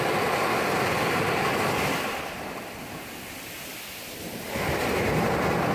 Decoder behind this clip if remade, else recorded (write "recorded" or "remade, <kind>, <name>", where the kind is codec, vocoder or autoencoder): recorded